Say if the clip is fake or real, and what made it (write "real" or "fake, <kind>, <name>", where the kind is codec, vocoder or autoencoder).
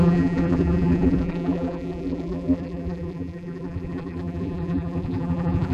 fake, vocoder, BigVGAN v2